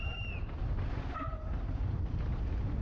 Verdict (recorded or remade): recorded